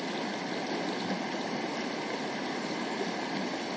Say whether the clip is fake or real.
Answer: real